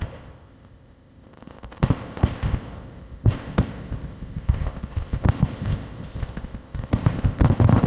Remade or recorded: remade